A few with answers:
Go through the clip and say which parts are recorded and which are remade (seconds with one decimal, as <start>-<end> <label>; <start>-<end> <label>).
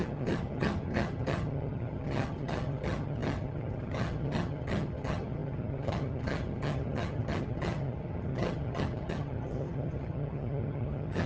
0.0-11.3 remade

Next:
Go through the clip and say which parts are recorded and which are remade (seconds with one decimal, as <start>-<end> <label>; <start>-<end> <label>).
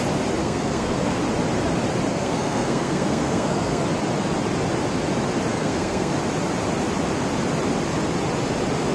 0.0-0.4 recorded; 0.4-1.2 remade; 1.2-2.1 recorded; 2.1-3.8 remade; 3.8-5.5 recorded; 5.5-6.1 remade; 6.1-8.9 recorded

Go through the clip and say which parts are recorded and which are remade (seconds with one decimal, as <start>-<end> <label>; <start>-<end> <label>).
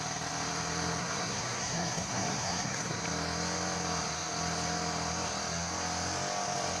0.0-1.0 recorded; 1.0-3.0 remade; 3.0-6.8 recorded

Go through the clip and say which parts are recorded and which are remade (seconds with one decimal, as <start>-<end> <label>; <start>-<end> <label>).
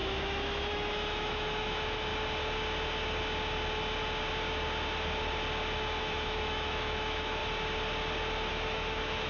0.0-2.1 remade; 2.1-6.0 recorded; 6.0-7.4 remade; 7.4-8.5 recorded; 8.5-9.3 remade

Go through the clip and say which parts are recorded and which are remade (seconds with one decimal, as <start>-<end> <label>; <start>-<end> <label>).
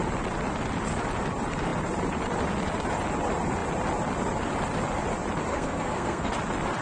0.0-5.5 recorded; 5.5-6.3 remade; 6.3-6.8 recorded